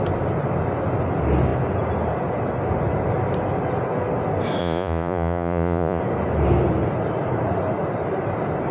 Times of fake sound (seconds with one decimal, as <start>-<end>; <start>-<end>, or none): 4.6-6.0